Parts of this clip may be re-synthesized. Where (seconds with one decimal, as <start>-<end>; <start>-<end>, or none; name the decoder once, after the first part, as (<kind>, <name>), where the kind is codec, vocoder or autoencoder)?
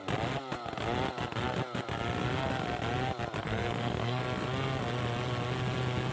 3.4-4.2 (codec, SNAC)